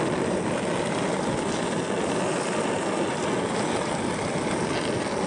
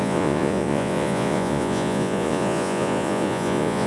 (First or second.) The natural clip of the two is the first